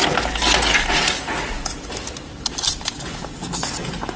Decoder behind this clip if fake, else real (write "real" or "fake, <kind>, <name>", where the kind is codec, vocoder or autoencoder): real